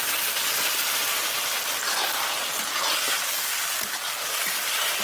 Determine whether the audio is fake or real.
real